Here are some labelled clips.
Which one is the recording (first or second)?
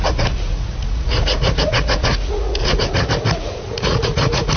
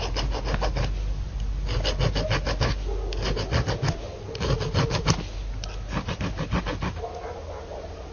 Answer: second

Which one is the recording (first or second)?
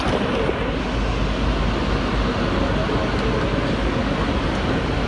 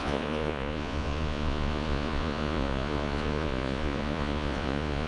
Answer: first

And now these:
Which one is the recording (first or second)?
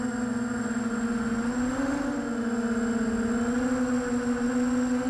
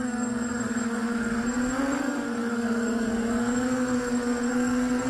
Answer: first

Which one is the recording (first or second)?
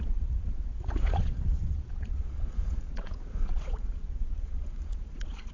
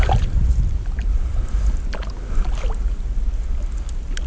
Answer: second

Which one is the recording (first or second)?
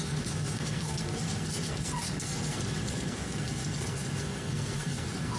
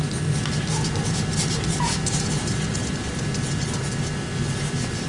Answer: second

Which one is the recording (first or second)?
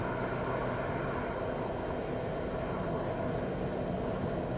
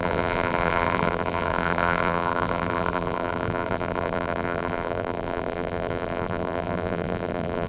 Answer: first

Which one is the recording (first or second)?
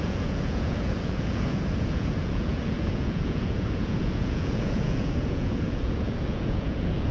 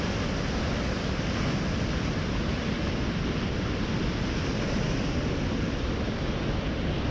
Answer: second